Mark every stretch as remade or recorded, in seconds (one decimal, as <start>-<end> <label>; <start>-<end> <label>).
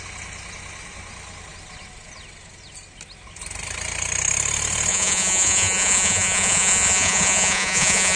0.0-4.9 recorded; 4.9-8.2 remade